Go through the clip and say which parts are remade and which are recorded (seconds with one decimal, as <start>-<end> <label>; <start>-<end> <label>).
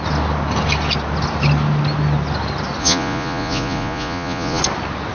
0.0-2.8 recorded; 2.8-4.6 remade; 4.6-5.1 recorded